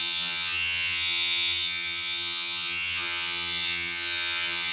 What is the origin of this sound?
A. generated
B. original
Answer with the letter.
A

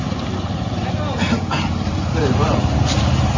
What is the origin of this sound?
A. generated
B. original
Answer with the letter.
B